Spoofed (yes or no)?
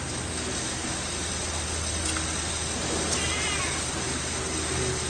no